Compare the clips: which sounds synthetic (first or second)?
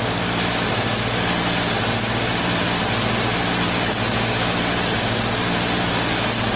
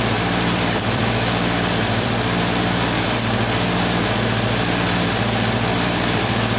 second